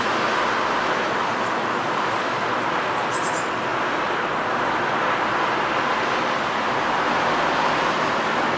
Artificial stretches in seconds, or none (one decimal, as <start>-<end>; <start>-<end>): none